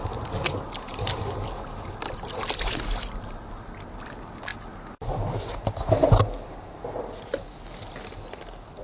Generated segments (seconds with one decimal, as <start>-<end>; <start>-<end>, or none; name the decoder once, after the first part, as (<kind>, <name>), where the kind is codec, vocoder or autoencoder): none